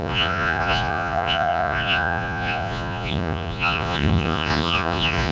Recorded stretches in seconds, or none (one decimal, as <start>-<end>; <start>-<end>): none